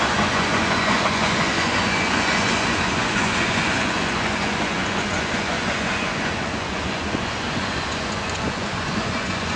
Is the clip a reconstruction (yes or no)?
yes